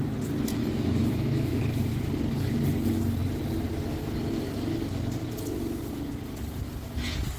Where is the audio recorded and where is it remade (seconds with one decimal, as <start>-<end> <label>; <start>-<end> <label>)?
0.0-0.6 recorded; 0.6-1.6 remade; 1.6-7.4 recorded